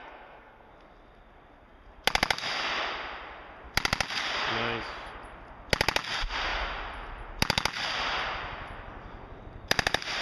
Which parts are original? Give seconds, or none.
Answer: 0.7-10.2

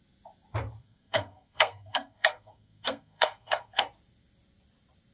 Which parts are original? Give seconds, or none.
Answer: 0.0-0.8; 3.8-5.1

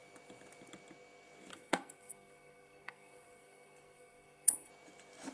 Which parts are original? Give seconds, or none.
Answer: 0.0-1.5; 4.7-5.3

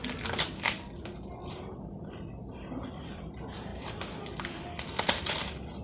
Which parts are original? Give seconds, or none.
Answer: 0.0-5.8

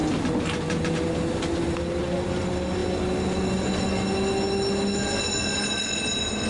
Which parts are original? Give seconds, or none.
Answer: 0.0-6.5

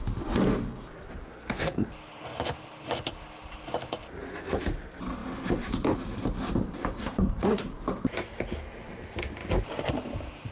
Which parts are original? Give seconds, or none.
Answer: 0.0-1.2; 1.9-7.0; 7.7-10.5

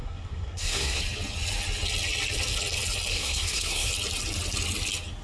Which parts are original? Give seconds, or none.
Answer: 1.0-3.1; 3.9-5.2